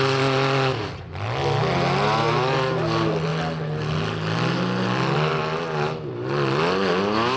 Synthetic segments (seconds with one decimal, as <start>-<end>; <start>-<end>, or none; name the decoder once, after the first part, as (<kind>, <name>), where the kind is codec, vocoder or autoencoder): none